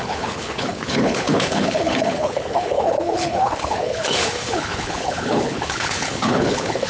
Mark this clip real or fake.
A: fake